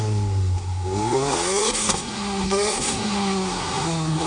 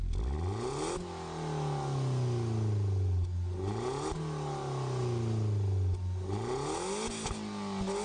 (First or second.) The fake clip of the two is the first